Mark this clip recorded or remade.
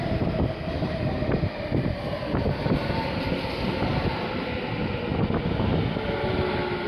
recorded